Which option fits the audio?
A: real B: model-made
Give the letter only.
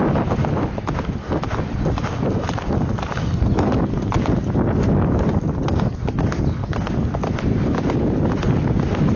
A